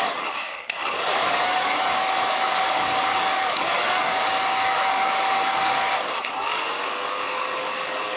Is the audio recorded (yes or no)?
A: no